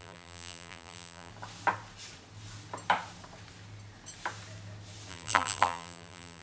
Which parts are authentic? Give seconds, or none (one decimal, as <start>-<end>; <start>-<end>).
1.3-5.1